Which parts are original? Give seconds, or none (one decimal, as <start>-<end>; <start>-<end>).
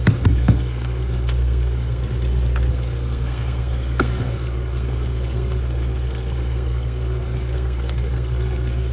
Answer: 2.0-2.7